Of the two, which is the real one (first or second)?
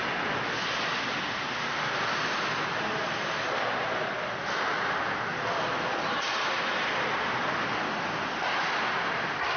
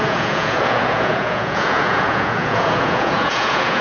first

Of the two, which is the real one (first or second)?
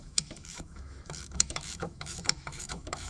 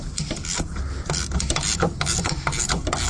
second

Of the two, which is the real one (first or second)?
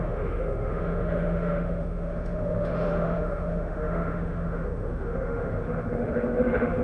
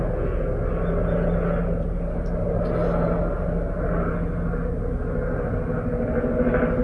second